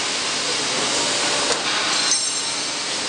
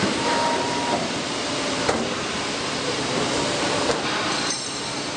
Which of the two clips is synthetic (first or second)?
second